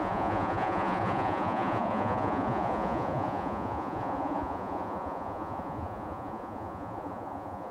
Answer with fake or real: fake